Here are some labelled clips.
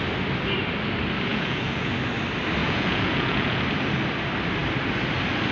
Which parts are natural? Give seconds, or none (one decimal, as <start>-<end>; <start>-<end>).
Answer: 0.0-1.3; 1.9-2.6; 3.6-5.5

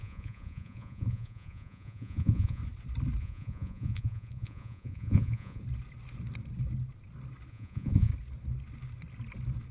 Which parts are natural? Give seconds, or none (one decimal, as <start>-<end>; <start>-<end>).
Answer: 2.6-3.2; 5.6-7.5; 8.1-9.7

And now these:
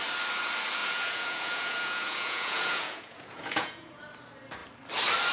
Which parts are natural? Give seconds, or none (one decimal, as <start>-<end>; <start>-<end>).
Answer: 0.0-0.8; 4.0-5.3